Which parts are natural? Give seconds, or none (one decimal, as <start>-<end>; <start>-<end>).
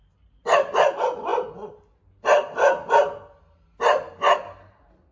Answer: 0.0-5.1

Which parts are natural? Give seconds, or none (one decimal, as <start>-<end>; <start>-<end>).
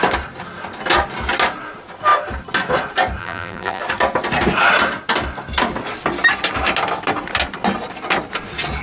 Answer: 0.0-3.2; 3.8-8.8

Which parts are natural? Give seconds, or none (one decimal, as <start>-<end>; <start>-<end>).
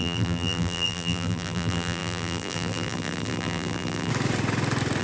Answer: 4.1-5.0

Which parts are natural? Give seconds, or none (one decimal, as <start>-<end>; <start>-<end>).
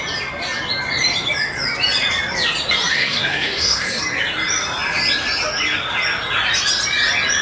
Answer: 0.0-2.9; 4.0-7.4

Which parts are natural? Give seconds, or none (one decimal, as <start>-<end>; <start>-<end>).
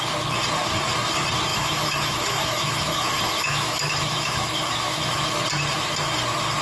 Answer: 0.0-1.5; 5.4-6.6